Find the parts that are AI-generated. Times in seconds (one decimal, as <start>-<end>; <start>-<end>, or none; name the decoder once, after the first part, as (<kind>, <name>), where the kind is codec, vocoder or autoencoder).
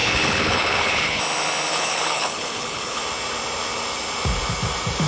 0.0-1.2 (codec, HILCodec); 1.7-3.0